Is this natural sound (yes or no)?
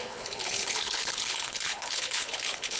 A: no